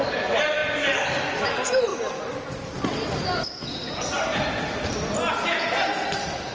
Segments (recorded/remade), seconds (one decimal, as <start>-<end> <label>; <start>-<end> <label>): 0.0-6.5 recorded